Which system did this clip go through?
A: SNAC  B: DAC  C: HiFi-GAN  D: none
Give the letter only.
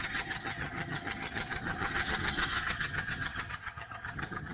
C